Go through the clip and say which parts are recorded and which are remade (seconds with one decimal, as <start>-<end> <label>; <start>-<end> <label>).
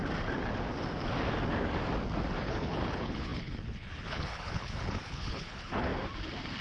0.0-2.4 recorded; 2.4-5.9 remade; 5.9-6.6 recorded